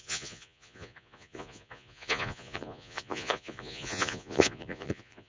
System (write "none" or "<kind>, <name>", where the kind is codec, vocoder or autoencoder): vocoder, Vocos